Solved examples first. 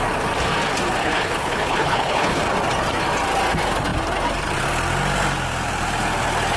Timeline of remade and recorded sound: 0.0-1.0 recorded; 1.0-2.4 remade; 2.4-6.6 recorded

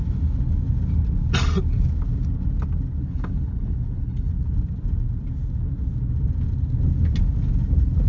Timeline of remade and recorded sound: 0.0-3.0 recorded; 3.0-4.3 remade; 4.3-8.1 recorded

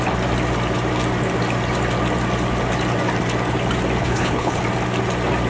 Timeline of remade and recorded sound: 0.0-4.0 recorded; 4.0-4.6 remade; 4.6-5.5 recorded

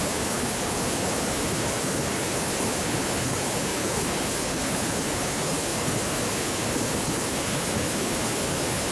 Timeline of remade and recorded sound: 0.0-8.9 remade

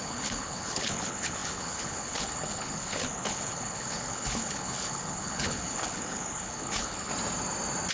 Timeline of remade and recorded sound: 0.0-7.1 remade; 7.1-7.9 recorded

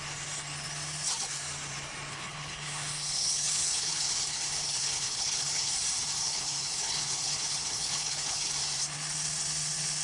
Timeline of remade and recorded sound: 0.0-2.1 recorded; 2.1-5.7 remade; 5.7-6.2 recorded; 6.2-8.5 remade; 8.5-10.0 recorded

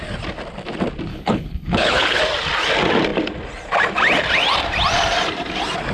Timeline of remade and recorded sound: 0.0-1.1 recorded; 1.1-2.2 remade; 2.2-5.9 recorded